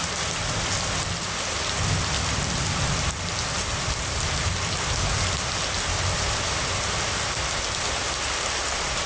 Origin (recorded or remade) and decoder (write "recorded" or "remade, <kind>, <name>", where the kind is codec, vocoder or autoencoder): recorded